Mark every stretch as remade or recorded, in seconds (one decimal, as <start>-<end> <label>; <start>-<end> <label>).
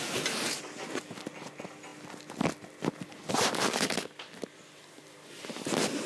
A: 0.0-6.1 recorded